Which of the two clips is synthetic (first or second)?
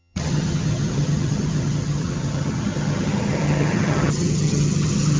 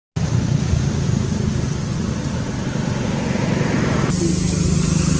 first